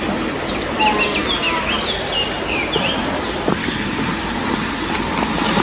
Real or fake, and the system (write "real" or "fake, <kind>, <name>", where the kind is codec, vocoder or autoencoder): real